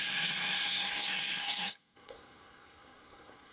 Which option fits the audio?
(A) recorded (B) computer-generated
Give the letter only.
B